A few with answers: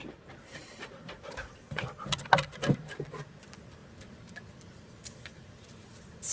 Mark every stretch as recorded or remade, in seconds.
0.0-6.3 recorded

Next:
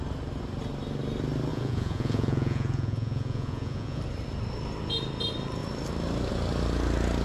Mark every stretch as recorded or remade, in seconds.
0.0-1.5 recorded; 1.5-4.0 remade; 4.0-7.2 recorded

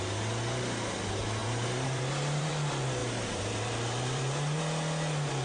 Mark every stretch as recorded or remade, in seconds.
0.0-1.4 recorded; 1.4-2.5 remade; 2.5-3.0 recorded; 3.0-4.6 remade; 4.6-5.4 recorded

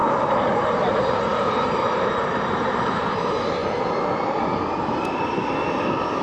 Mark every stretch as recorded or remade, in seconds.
0.0-0.7 recorded; 0.7-3.6 remade; 3.6-6.2 recorded